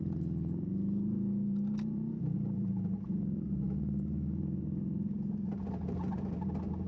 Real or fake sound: fake